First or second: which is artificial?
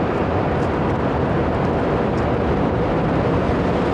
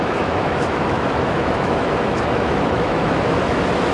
second